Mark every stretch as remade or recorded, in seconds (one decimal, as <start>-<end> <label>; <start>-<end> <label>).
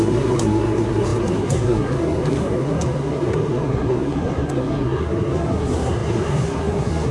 0.0-7.1 remade